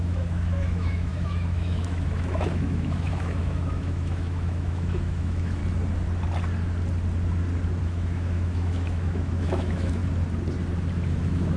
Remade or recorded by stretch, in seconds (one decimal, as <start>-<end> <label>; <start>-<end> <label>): 0.0-5.6 remade; 5.6-7.8 recorded; 7.8-10.0 remade; 10.0-11.1 recorded; 11.1-11.6 remade